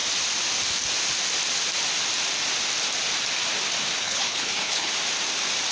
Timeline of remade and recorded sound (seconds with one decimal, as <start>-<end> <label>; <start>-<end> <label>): 0.0-4.0 recorded; 4.0-4.9 remade; 4.9-5.7 recorded